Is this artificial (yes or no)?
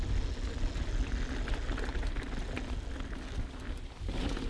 no